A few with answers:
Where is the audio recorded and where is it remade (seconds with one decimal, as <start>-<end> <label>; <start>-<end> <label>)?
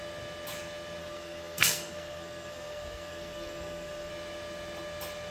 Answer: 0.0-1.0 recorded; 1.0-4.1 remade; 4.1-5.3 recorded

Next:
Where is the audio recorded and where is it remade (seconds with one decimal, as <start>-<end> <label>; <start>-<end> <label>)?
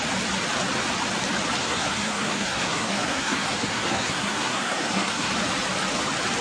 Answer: 0.0-1.6 recorded; 1.6-5.3 remade; 5.3-6.4 recorded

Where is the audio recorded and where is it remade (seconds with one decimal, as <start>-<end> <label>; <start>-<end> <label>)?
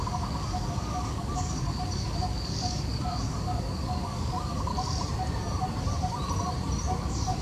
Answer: 0.0-4.7 remade; 4.7-7.0 recorded; 7.0-7.4 remade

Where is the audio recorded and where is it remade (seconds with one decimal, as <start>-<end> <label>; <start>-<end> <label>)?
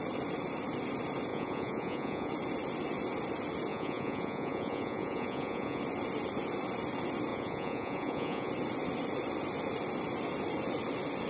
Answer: 0.0-1.3 recorded; 1.3-2.3 remade; 2.3-3.7 recorded; 3.7-5.8 remade; 5.8-7.3 recorded; 7.3-8.5 remade; 8.5-11.3 recorded